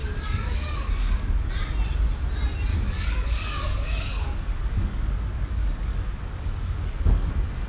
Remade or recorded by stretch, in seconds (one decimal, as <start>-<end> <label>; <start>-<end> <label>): 0.0-1.5 remade; 1.5-2.7 recorded; 2.7-7.3 remade; 7.3-7.7 recorded